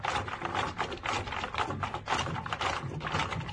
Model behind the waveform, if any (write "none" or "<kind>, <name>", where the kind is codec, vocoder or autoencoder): none